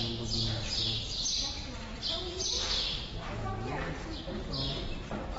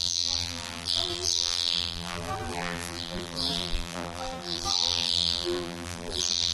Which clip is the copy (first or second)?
second